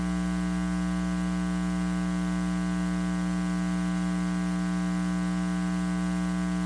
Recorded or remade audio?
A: recorded